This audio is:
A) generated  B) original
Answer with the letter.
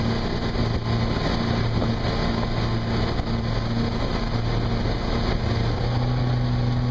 B